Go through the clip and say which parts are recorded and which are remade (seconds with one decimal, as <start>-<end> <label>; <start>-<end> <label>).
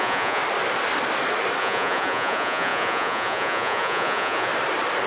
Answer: 0.0-0.4 remade; 0.4-1.6 recorded; 1.6-4.5 remade; 4.5-5.1 recorded